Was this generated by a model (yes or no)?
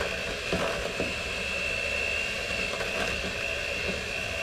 no